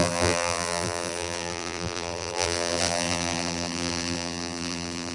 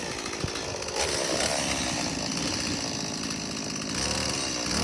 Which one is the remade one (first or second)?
first